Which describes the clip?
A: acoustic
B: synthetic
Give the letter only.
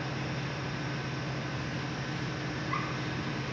A